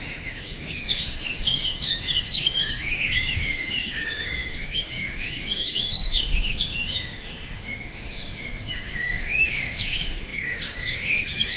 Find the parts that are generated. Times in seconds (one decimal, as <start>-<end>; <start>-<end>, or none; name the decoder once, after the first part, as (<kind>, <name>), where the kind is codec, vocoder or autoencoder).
0.0-11.6 (autoencoder, DAC-VAE)